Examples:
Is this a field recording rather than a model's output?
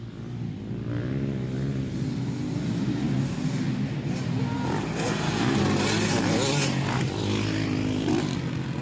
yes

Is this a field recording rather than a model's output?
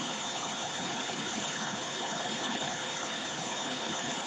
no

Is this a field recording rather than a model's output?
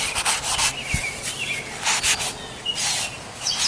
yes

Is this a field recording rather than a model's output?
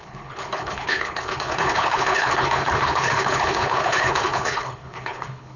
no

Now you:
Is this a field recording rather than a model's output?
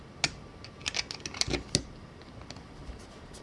yes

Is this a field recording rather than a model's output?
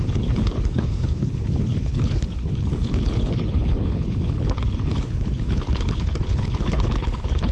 no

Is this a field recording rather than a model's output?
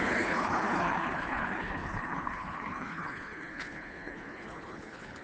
no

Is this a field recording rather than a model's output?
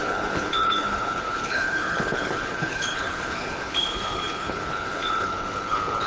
no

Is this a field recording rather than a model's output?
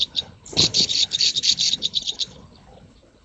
no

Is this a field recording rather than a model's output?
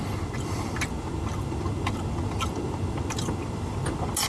yes